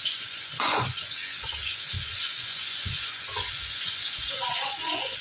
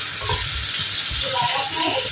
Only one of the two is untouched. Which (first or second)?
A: second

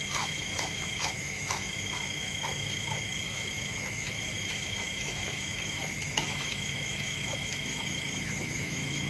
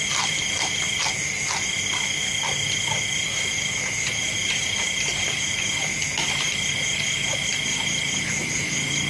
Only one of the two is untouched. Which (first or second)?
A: second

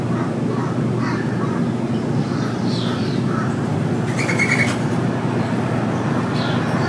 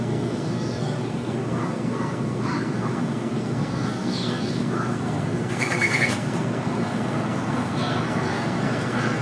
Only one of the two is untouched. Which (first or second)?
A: first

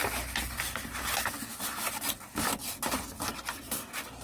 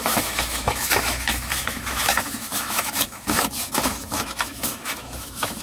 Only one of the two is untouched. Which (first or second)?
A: first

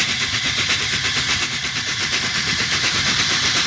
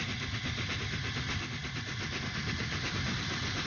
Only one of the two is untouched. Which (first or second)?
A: second